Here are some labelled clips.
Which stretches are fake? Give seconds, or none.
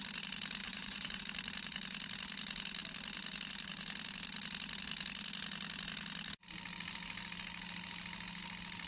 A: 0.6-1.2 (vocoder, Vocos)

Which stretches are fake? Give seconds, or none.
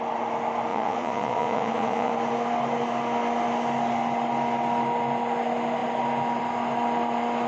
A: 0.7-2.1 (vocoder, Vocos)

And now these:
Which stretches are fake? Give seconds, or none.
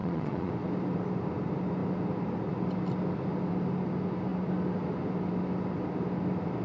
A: 0.0-0.5 (vocoder, Vocos)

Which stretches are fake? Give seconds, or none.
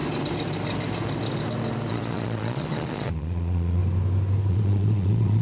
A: 1.9-3.8 (vocoder, Vocos); 4.5-5.4